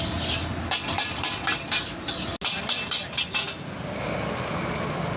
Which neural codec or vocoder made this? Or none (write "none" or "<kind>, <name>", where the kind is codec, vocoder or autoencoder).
none